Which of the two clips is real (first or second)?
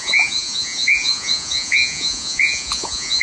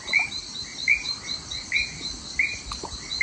second